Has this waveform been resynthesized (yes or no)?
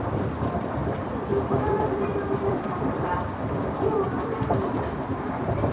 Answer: yes